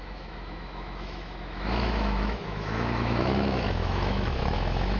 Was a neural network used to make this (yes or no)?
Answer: yes